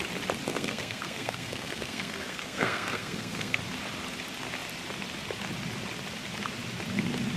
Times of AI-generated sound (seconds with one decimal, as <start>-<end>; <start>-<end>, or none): 0.5-3.6